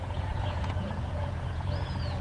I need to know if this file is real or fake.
fake